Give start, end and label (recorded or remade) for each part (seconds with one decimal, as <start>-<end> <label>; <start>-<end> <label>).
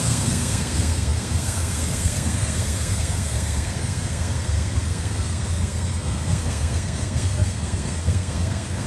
0.0-8.9 remade